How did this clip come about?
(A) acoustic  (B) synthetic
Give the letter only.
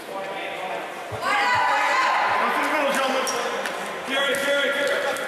A